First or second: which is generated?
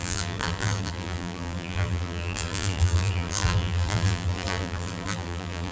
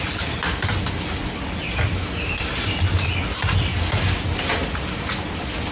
first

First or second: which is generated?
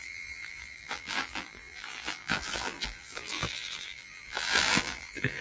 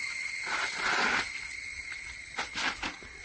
first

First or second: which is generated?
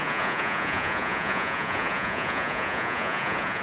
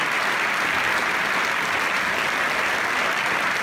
first